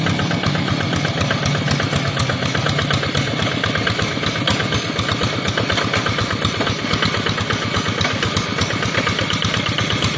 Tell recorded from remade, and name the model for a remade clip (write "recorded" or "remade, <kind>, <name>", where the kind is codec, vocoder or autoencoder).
recorded